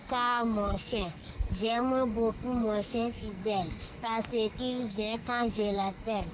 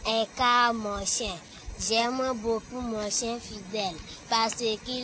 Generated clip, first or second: first